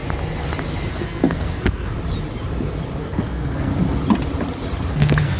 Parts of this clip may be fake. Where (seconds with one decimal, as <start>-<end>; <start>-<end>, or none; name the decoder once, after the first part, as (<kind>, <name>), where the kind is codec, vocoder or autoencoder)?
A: 0.9-1.9 (codec, SNAC); 3.0-3.7; 4.9-5.4